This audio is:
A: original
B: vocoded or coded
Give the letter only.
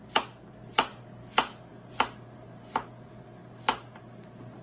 A